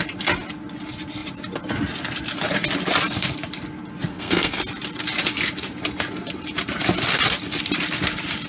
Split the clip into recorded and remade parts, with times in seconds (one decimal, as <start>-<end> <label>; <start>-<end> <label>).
0.0-4.1 recorded; 4.1-4.6 remade; 4.6-8.5 recorded